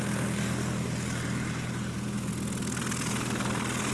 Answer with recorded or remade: recorded